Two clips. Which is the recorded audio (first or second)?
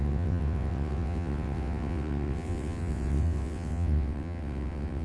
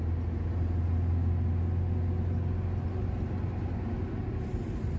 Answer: second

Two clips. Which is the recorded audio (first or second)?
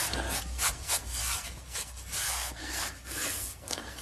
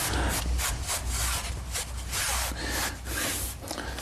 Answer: second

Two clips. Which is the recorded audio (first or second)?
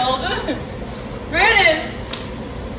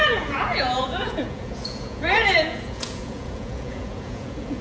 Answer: first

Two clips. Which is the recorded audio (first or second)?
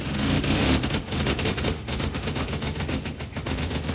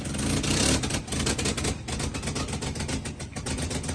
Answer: second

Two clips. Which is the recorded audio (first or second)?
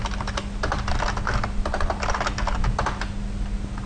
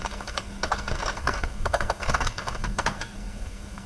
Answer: first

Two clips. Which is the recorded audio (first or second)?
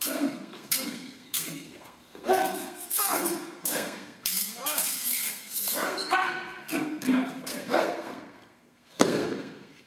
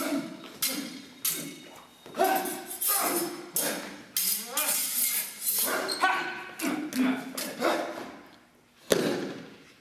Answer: second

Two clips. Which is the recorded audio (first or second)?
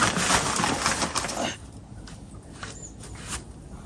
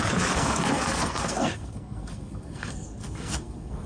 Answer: first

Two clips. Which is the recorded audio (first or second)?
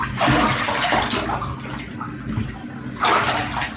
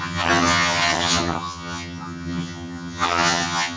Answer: first